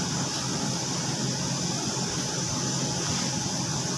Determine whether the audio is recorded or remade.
recorded